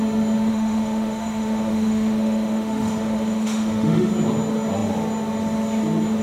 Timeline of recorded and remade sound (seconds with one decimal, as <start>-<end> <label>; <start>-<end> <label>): 0.0-0.5 recorded; 0.5-4.1 remade; 4.1-6.2 recorded